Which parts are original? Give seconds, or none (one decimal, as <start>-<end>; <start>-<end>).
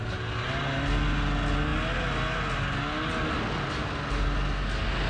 0.0-5.1